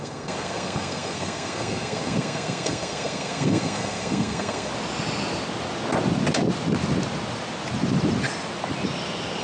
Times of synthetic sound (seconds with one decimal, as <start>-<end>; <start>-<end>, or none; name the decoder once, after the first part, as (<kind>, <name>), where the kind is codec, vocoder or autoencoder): 0.0-4.7 (codec, SNAC)